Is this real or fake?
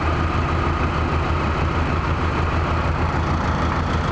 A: fake